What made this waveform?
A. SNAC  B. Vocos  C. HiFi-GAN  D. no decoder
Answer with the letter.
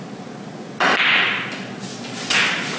D